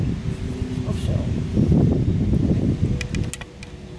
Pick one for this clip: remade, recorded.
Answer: recorded